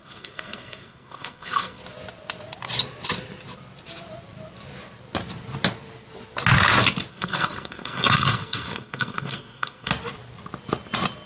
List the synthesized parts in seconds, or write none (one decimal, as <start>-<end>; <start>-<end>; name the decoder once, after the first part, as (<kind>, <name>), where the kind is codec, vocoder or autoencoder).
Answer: 0.0-1.8 (codec, SNAC); 7.1-9.9